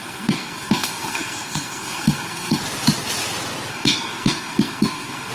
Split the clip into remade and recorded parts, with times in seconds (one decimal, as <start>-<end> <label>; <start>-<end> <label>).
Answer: 0.0-2.6 remade; 2.6-3.7 recorded; 3.7-5.3 remade